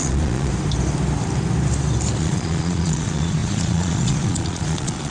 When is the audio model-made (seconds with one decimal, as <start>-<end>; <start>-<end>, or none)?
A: 0.0-0.5; 2.2-5.1